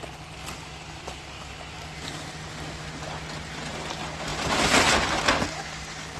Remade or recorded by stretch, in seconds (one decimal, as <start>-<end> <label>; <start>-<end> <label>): 0.0-6.2 recorded